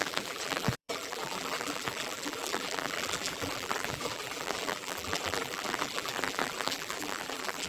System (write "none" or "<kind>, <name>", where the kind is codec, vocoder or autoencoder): vocoder, BigVGAN v2